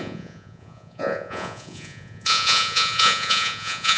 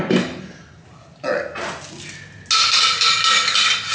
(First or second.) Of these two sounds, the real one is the second